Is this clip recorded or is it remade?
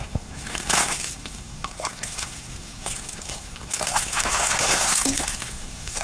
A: remade